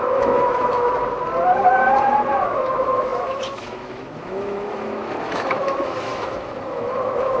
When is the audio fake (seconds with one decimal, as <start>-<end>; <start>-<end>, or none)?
0.0-1.0; 2.4-7.4

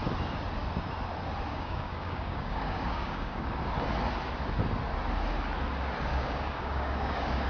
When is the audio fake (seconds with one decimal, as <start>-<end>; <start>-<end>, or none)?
1.5-3.5; 6.1-7.5

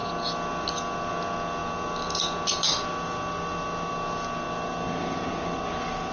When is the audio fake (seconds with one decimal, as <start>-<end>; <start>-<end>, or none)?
none

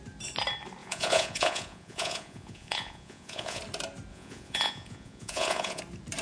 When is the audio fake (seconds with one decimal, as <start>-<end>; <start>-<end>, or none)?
0.8-3.6; 4.1-5.8